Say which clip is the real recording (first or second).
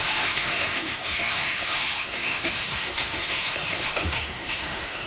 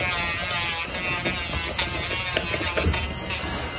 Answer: second